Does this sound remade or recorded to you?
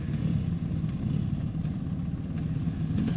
recorded